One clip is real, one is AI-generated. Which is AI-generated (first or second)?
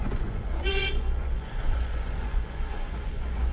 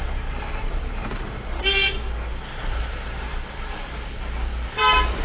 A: first